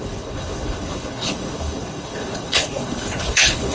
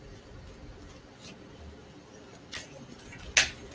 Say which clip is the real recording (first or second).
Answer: second